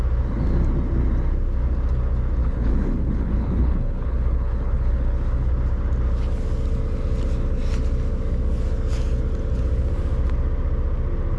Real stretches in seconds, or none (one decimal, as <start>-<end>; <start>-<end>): 0.0-2.4; 5.5-11.4